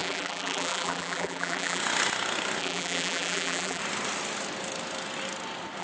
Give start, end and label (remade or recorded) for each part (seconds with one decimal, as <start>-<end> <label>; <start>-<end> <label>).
0.0-1.8 remade; 1.8-2.6 recorded; 2.6-3.8 remade; 3.8-5.8 recorded